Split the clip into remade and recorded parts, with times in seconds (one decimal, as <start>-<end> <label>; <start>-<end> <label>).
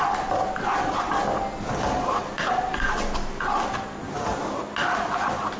0.0-5.6 recorded